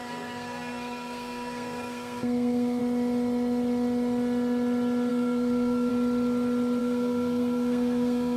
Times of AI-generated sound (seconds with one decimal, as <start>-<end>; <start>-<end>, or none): 0.0-2.8; 5.1-5.9; 6.8-8.4